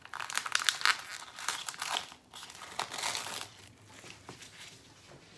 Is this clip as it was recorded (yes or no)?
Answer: yes